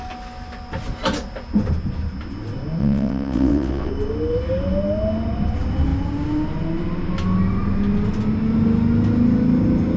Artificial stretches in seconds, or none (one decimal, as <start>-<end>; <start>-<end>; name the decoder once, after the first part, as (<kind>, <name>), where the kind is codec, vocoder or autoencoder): 2.8-3.9 (vocoder, WaveNeXt)